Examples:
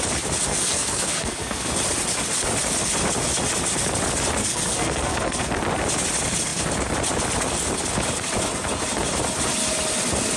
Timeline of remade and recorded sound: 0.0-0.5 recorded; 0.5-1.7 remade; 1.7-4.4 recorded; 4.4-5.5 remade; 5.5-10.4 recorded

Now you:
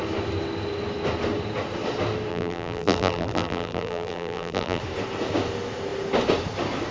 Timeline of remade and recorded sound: 0.0-2.3 recorded; 2.3-4.8 remade; 4.8-6.9 recorded